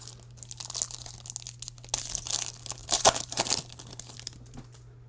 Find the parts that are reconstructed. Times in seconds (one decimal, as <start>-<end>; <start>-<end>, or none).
2.8-3.4